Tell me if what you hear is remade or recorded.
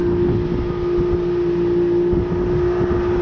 recorded